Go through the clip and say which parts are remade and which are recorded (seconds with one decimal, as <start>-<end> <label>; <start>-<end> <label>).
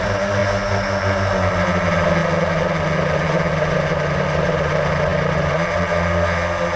0.0-6.8 recorded